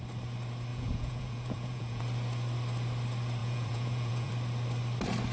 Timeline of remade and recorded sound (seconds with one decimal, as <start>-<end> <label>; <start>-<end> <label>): 0.0-0.7 recorded; 0.7-2.0 remade; 2.0-3.4 recorded; 3.4-4.3 remade; 4.3-5.3 recorded